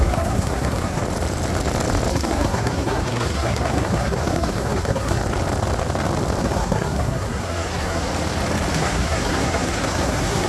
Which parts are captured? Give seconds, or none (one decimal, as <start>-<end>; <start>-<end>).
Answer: 1.0-2.1; 5.2-6.4; 8.1-8.7